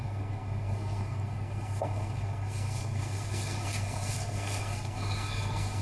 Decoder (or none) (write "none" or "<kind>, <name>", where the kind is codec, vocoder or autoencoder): codec, SNAC